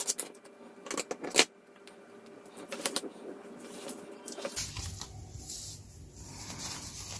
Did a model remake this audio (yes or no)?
no